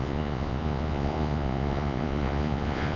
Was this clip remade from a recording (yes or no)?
yes